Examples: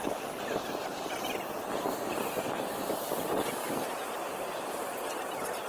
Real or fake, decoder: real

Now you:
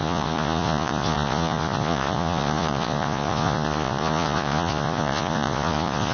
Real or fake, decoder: fake, vocoder, Vocos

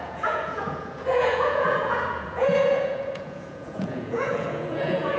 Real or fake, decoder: fake, vocoder, Vocos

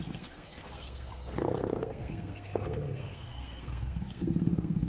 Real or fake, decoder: fake, codec, SNAC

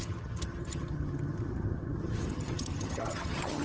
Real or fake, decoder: fake, vocoder, HiFi-GAN